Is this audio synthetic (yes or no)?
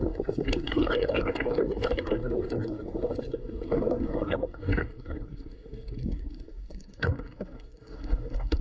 yes